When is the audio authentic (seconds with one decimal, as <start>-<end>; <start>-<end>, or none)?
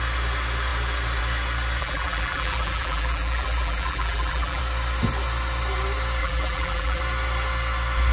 0.0-1.8; 4.6-6.2; 7.0-8.1